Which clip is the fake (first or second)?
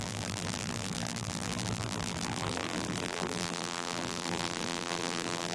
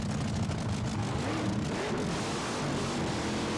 first